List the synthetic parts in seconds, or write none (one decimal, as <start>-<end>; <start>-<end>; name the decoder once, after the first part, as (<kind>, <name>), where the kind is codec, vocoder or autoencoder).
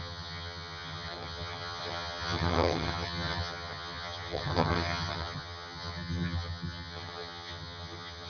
0.0-8.3 (vocoder, HiFi-GAN)